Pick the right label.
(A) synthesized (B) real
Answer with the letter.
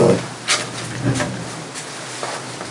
B